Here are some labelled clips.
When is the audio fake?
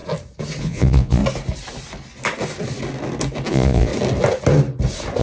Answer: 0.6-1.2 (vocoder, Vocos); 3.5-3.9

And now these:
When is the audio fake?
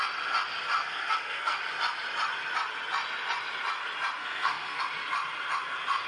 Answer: 0.8-1.6 (codec, SNAC); 4.2-4.8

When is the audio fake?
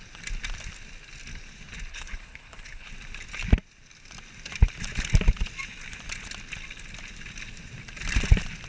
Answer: 1.9-2.9 (codec, HILCodec)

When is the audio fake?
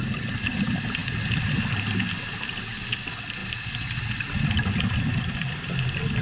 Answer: none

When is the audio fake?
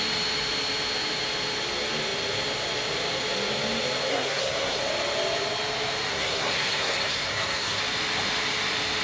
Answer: 4.1-4.8 (codec, SNAC); 6.1-7.8